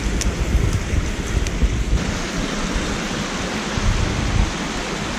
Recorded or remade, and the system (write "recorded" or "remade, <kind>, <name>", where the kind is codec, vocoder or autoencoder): recorded